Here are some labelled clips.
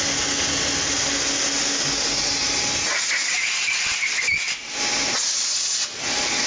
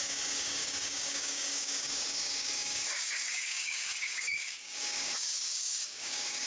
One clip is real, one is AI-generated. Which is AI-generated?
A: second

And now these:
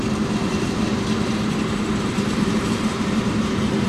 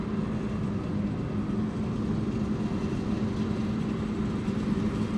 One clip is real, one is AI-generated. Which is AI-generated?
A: first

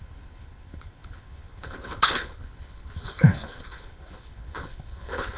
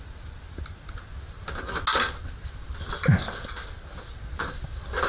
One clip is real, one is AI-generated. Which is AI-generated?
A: first